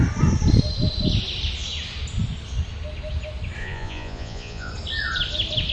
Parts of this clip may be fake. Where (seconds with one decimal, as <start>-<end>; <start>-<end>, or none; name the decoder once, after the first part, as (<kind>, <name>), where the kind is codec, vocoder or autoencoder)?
3.6-4.7 (vocoder, Vocos)